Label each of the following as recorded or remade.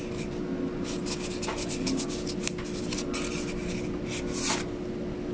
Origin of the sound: recorded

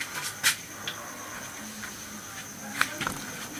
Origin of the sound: recorded